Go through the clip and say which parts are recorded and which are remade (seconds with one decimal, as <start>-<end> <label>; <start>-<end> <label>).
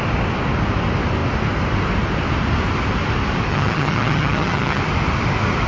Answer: 0.0-3.5 recorded; 3.5-4.8 remade; 4.8-5.7 recorded